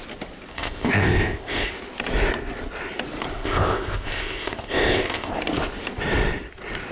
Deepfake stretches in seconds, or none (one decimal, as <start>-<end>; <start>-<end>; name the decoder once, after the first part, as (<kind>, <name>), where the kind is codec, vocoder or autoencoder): 0.5-1.7 (codec, ZipCodec); 3.3-5.3